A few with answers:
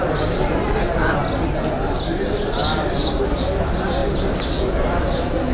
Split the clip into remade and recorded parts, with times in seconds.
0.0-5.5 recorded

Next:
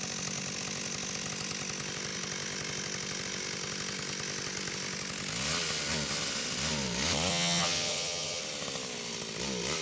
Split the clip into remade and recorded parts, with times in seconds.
0.0-7.3 recorded; 7.3-8.4 remade; 8.4-9.8 recorded

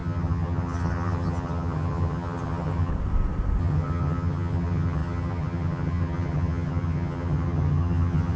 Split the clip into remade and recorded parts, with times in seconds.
0.0-2.9 remade; 2.9-3.6 recorded; 3.6-8.4 remade

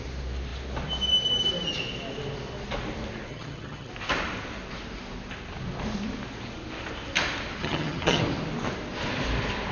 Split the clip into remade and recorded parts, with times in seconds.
0.0-3.3 recorded; 3.3-3.9 remade; 3.9-7.6 recorded; 7.6-8.2 remade; 8.2-9.7 recorded

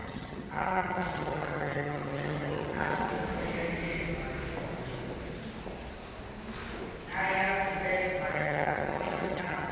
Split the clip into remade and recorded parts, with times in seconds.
0.0-3.1 remade; 3.1-8.3 recorded; 8.3-9.7 remade

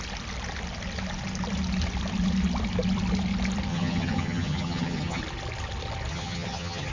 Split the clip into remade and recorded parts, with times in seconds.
0.0-3.7 recorded; 3.7-5.2 remade; 5.2-6.1 recorded; 6.1-6.9 remade

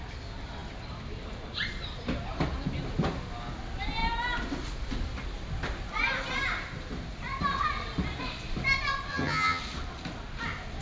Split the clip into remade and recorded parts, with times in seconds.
0.0-9.1 recorded; 9.1-9.6 remade; 9.6-10.8 recorded